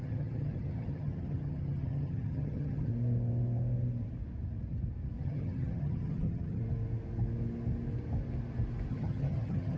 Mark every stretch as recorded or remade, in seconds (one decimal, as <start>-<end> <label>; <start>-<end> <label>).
0.0-2.9 remade; 2.9-5.2 recorded; 5.2-6.6 remade; 6.6-8.9 recorded; 8.9-9.8 remade